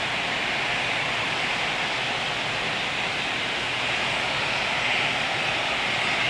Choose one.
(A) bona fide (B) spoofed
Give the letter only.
B